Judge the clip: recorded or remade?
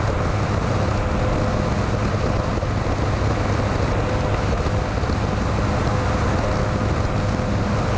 recorded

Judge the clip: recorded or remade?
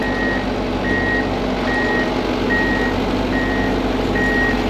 recorded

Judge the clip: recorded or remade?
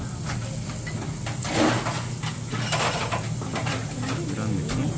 recorded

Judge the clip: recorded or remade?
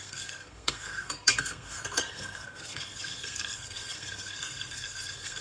remade